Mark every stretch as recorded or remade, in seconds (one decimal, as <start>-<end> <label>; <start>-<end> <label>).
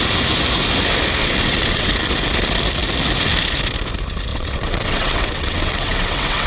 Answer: 0.0-1.2 recorded; 1.2-1.9 remade; 1.9-4.3 recorded; 4.3-6.5 remade